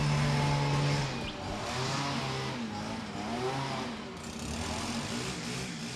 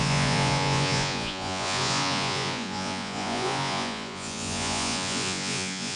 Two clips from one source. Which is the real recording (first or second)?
first